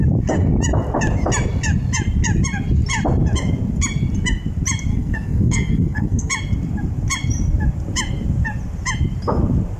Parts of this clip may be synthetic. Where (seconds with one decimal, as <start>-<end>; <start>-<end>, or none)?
4.9-6.3